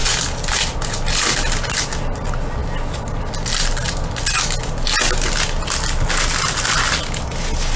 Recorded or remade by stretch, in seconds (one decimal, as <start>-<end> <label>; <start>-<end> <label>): 0.0-7.8 recorded